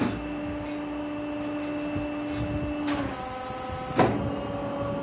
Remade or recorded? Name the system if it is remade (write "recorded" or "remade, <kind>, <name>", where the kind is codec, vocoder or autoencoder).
recorded